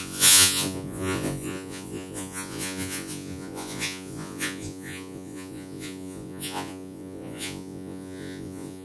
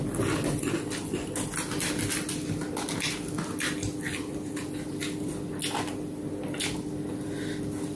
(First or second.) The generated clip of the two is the first